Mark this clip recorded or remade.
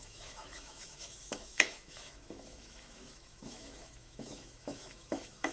remade